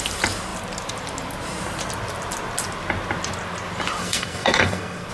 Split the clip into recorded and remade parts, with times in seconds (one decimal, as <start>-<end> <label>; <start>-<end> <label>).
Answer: 0.0-4.0 recorded; 4.0-5.1 remade